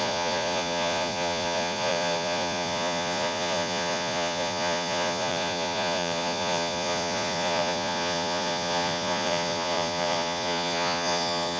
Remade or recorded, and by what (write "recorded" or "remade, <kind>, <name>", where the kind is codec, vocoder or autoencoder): remade, vocoder, Vocos